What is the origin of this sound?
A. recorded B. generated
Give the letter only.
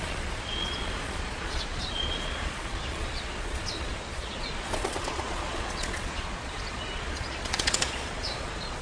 B